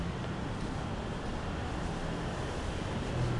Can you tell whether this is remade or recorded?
recorded